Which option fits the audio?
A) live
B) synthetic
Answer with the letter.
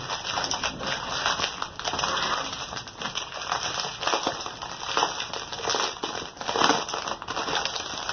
A